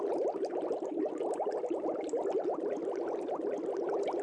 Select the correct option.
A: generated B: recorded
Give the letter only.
B